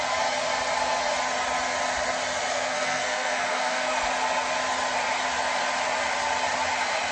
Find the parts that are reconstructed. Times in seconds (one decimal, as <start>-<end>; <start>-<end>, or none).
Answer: 2.5-4.1